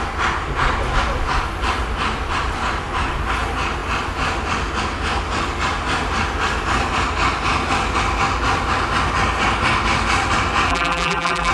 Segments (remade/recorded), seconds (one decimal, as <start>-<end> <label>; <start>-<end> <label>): 0.0-10.7 recorded; 10.7-11.5 remade